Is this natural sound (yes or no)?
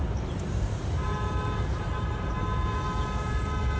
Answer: no